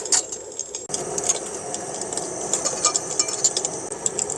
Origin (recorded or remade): recorded